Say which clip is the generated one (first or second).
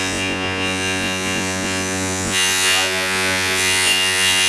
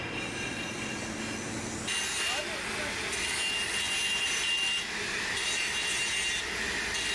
first